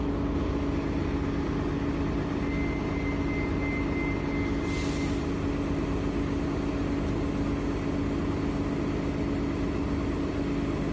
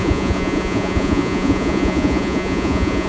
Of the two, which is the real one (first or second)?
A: first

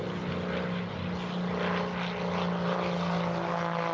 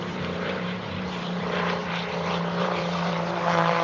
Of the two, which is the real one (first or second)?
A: first